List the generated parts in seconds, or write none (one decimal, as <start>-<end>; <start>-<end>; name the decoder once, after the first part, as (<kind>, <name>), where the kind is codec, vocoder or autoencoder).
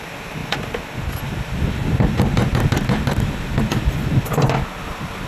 none